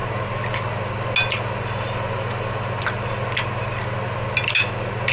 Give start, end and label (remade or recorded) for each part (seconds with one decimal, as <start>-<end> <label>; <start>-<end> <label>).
0.0-5.1 recorded